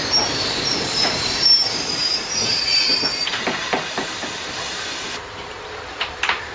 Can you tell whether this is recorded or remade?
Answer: remade